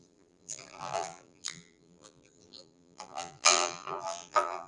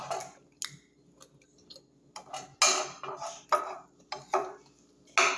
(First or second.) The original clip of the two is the second